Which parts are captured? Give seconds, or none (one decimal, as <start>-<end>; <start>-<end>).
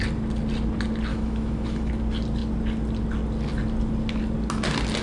0.0-1.1; 1.9-5.0